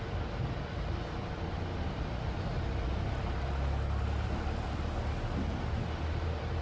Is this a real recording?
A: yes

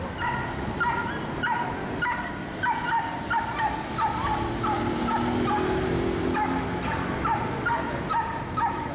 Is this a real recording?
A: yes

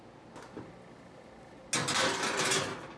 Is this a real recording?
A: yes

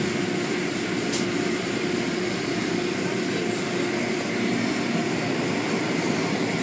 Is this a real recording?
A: no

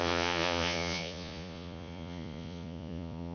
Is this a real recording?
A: no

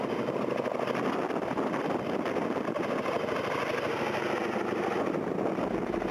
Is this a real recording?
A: yes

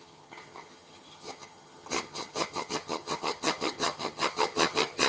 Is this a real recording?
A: no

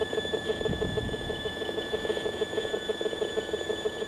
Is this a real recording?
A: no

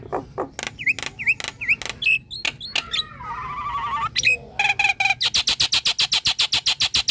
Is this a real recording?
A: yes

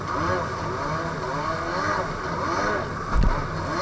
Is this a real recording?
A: yes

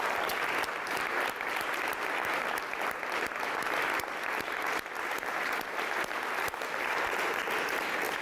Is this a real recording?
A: yes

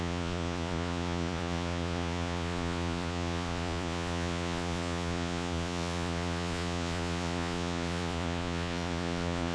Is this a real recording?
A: no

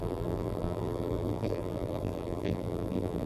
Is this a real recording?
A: no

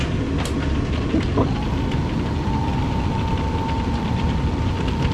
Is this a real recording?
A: yes